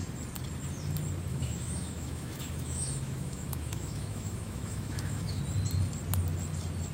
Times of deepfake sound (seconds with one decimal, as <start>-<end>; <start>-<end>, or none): 1.3-5.4